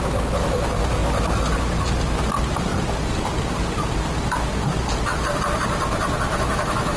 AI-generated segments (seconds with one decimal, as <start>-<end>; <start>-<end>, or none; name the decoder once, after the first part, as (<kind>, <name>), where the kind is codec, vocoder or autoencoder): 6.3-7.0 (autoencoder, DAC-VAE)